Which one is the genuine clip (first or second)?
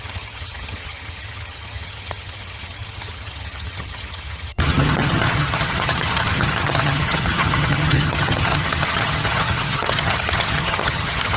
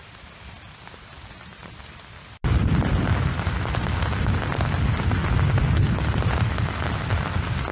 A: second